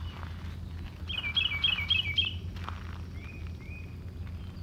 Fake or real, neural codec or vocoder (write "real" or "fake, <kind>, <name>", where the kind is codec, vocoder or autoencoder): real